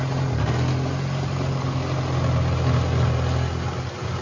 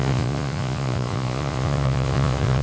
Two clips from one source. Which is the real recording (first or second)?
first